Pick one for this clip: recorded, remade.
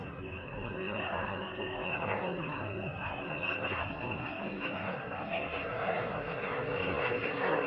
remade